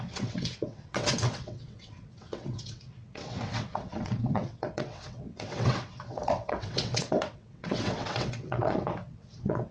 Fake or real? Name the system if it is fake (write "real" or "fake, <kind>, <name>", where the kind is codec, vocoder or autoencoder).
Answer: fake, vocoder, WaveNeXt